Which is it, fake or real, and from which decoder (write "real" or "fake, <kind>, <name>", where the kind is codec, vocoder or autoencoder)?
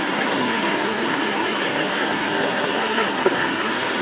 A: fake, codec, SNAC